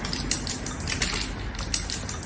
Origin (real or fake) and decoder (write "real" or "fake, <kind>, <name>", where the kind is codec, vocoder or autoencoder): real